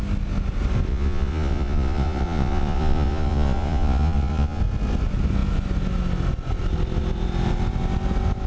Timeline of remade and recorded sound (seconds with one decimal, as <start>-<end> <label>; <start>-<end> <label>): 0.0-0.9 recorded; 0.9-4.6 remade; 4.6-8.5 recorded

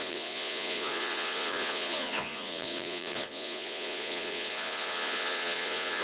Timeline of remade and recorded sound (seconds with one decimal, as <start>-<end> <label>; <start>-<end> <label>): 0.0-6.0 remade

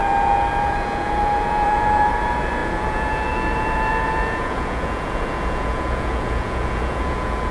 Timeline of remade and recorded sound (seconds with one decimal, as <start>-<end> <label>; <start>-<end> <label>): 0.0-7.5 remade

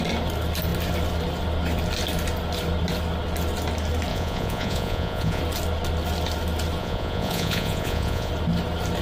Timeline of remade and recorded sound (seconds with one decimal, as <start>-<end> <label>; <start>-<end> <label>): 0.0-4.1 recorded; 4.1-5.4 remade; 5.4-6.8 recorded; 6.8-8.3 remade; 8.3-9.0 recorded

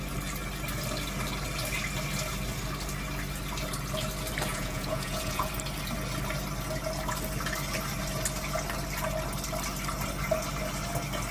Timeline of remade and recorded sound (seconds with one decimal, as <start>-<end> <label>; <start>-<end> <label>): 0.0-4.5 recorded; 4.5-5.5 remade; 5.5-11.3 recorded

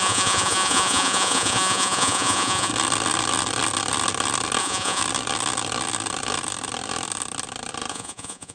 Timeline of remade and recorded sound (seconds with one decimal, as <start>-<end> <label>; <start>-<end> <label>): 0.0-2.7 remade; 2.7-4.6 recorded; 4.6-5.0 remade; 5.0-7.9 recorded; 7.9-8.5 remade

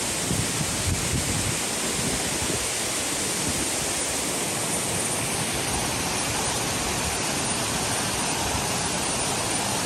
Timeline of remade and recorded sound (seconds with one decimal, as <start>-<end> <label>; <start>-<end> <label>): 0.0-9.9 recorded

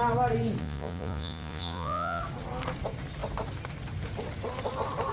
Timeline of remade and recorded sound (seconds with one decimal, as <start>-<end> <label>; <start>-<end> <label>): 0.0-0.6 recorded; 0.6-2.2 remade; 2.2-5.1 recorded